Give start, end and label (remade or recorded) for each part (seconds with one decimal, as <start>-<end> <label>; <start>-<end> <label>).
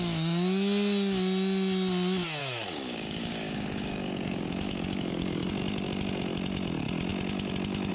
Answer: 0.0-2.4 recorded; 2.4-5.5 remade; 5.5-7.9 recorded